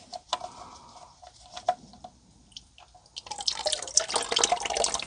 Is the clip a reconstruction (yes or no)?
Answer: no